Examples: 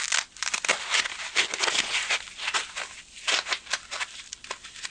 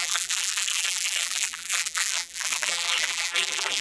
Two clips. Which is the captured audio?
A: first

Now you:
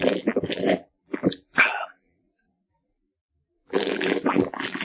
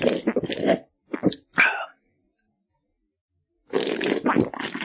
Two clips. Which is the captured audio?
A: second